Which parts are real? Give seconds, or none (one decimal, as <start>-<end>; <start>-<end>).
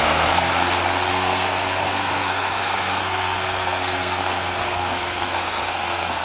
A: 0.5-1.1